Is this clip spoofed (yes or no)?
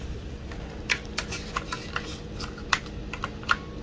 no